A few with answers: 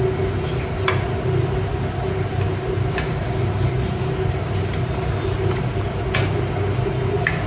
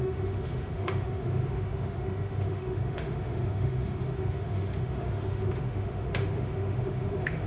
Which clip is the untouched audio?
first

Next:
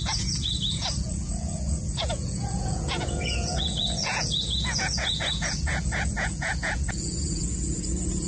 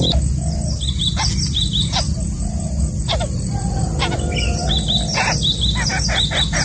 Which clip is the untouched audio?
second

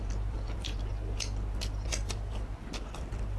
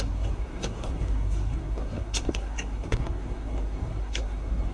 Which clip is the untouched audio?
first